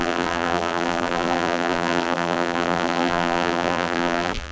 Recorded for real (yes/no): no